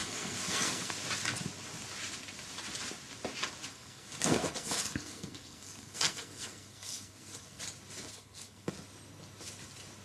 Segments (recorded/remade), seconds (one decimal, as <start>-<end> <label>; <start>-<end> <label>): 0.0-0.9 remade; 0.9-3.7 recorded; 3.7-7.6 remade; 7.6-8.1 recorded; 8.1-8.7 remade; 8.7-10.0 recorded